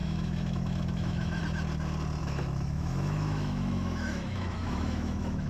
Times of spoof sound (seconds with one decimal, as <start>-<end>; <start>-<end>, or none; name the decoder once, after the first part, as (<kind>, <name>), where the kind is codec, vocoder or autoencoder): 0.0-1.4 (autoencoder, DAC-VAE); 2.2-5.5